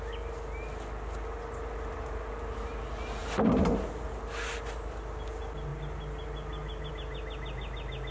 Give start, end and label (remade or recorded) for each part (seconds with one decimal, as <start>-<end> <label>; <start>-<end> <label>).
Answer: 0.0-8.1 recorded